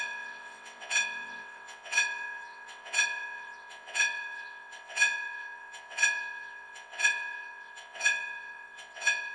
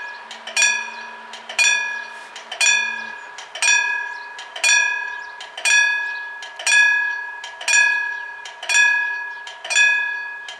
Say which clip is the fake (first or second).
first